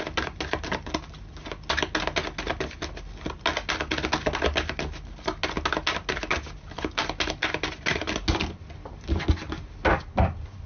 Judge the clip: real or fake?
real